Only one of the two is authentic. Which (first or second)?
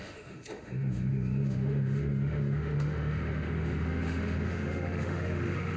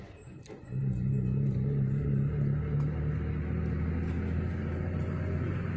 second